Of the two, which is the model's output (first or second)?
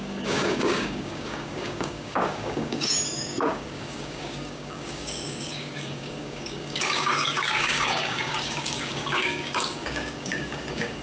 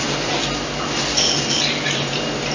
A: first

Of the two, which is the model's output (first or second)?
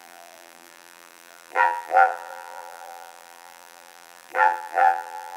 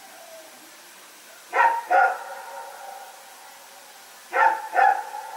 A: first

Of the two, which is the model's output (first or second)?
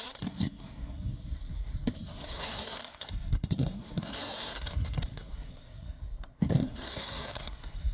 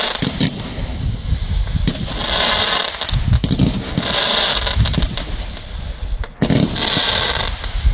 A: first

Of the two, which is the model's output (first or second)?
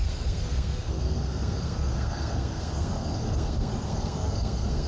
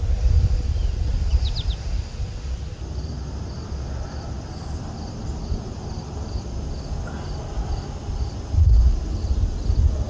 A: first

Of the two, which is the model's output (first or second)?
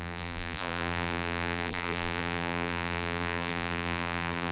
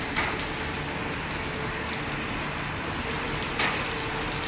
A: first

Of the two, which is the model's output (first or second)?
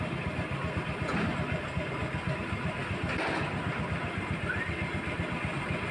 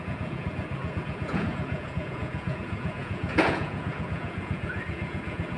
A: second